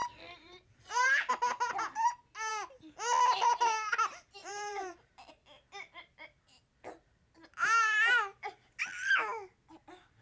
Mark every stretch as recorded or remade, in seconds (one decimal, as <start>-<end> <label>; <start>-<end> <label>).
0.0-1.3 remade; 1.3-4.4 recorded; 4.4-5.3 remade; 5.3-10.2 recorded